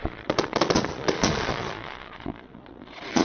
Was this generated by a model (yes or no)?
yes